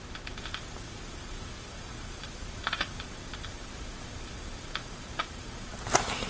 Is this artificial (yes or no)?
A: yes